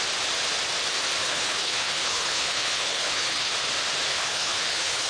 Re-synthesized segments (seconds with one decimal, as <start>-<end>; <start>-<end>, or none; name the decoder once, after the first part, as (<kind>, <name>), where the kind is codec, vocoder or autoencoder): 1.2-3.5 (codec, HILCodec); 4.1-5.1

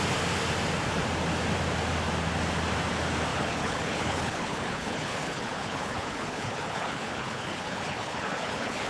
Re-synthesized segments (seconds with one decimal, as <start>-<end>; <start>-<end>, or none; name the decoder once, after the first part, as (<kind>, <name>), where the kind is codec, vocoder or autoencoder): 3.3-8.9 (codec, HILCodec)

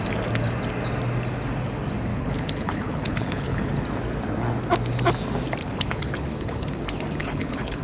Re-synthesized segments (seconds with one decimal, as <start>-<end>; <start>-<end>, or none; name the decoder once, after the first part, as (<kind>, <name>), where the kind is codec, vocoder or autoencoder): 2.1-3.7 (codec, HILCodec); 5.6-6.7; 7.2-7.8

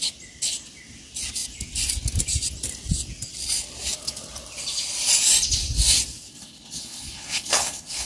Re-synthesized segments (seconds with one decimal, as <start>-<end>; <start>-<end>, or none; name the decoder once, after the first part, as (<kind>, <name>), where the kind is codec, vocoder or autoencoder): 6.3-8.1 (codec, HILCodec)

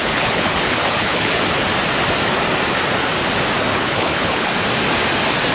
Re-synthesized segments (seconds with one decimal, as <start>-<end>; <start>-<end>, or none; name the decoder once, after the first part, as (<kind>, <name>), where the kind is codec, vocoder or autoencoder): 0.0-1.4 (codec, HILCodec); 3.7-4.5

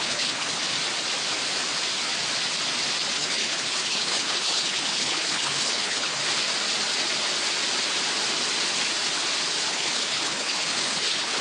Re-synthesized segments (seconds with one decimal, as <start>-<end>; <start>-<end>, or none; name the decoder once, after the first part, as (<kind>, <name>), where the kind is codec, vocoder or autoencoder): 0.0-0.8 (codec, HILCodec); 3.1-6.2; 9.7-11.4

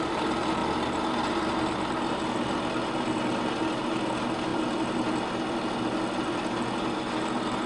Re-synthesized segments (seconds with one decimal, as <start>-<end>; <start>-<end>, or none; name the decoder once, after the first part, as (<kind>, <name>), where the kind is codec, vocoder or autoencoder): none

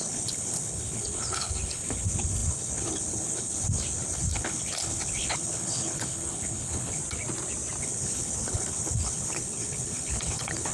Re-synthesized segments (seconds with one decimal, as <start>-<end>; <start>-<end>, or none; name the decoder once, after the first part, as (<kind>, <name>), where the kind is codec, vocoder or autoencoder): 0.0-7.0 (codec, HILCodec); 7.8-10.7